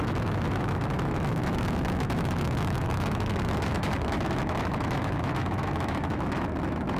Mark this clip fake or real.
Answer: fake